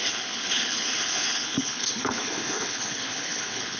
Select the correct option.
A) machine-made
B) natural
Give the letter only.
A